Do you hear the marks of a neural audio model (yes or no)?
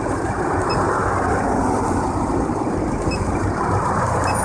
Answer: no